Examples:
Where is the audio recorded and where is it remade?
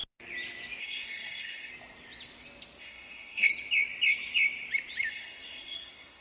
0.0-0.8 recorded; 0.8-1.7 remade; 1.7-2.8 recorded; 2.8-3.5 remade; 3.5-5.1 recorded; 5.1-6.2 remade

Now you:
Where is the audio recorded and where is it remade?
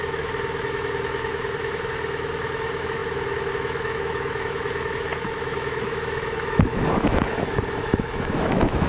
0.0-8.9 remade